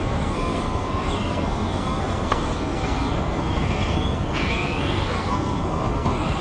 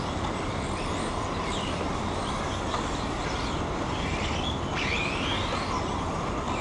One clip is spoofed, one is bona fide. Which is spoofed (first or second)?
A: first